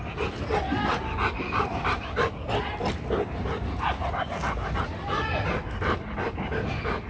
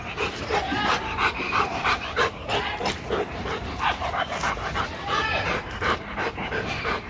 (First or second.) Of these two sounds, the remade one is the second